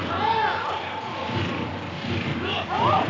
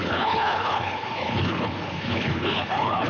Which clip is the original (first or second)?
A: first